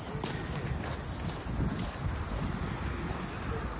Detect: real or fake real